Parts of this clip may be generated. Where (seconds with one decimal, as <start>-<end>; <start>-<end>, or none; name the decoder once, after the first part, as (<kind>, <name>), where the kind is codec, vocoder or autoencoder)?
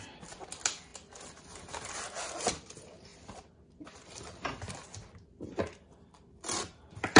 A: none